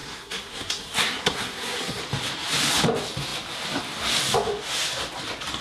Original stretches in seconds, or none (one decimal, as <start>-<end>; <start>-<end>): 2.0-5.6